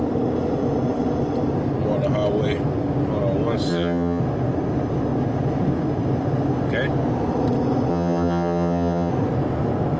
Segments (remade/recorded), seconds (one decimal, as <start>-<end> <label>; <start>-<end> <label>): 0.0-3.7 recorded; 3.7-4.2 remade; 4.2-7.9 recorded; 7.9-9.1 remade; 9.1-10.0 recorded